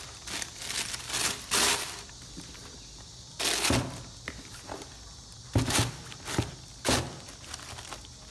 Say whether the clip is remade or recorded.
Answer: recorded